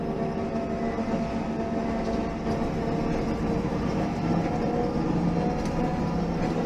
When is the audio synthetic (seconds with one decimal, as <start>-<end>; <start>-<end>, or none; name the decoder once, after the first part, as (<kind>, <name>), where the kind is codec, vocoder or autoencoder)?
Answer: none